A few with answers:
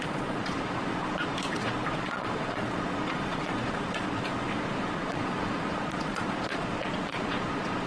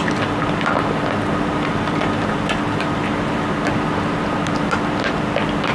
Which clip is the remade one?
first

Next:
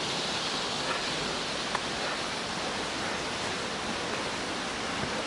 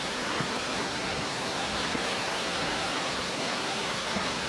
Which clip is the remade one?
second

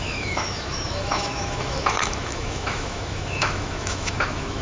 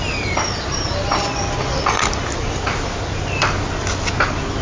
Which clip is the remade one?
first